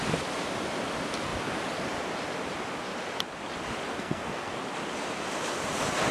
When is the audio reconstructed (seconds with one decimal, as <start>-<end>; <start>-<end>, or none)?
3.9-4.6